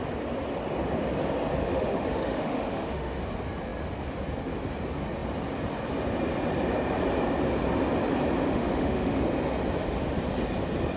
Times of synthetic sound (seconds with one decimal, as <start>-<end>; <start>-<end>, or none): 1.6-3.2; 8.5-9.2